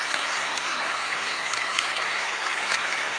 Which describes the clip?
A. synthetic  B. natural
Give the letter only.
A